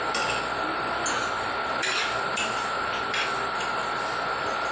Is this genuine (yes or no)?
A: yes